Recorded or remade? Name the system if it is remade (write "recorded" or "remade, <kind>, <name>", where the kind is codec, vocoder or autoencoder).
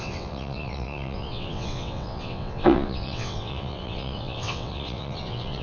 remade, vocoder, WaveNeXt